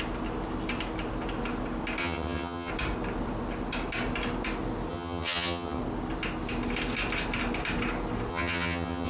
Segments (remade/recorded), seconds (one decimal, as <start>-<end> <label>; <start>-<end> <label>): 0.0-2.0 recorded; 2.0-2.7 remade; 2.7-4.9 recorded; 4.9-5.8 remade; 5.8-8.3 recorded; 8.3-9.1 remade